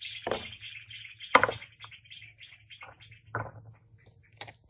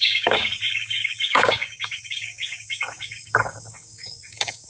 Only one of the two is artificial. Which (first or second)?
second